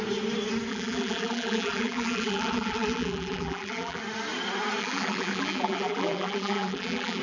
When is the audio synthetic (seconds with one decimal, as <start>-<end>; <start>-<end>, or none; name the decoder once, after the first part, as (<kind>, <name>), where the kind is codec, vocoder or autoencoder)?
0.7-4.0 (vocoder, BigVGAN v2); 4.8-7.2